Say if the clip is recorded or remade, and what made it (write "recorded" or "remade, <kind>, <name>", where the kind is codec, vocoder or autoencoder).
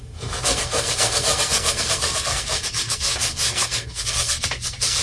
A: remade, codec, SNAC